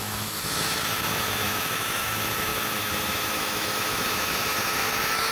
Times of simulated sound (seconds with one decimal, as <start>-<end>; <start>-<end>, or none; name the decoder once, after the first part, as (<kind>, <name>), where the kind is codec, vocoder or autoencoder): 0.0-5.3 (autoencoder, DAC-VAE)